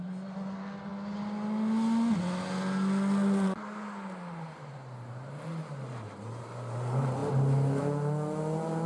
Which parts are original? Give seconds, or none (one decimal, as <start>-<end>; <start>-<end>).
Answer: 0.0-8.9